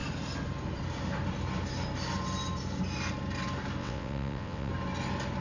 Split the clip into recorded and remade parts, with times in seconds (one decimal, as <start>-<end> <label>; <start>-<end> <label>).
0.0-3.8 recorded; 3.8-4.7 remade; 4.7-5.4 recorded